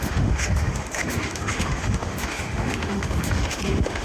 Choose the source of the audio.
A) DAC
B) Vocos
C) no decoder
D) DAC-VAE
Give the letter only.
D